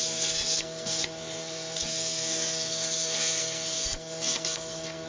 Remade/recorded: remade